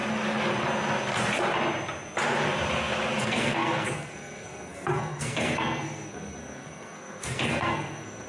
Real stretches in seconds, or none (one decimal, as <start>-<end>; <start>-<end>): 0.0-3.2